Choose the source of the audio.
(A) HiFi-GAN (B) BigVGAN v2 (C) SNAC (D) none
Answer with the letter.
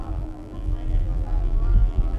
B